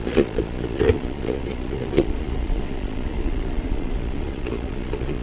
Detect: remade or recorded remade